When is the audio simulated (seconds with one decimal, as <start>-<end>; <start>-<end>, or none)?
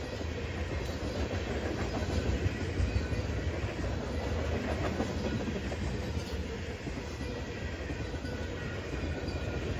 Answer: none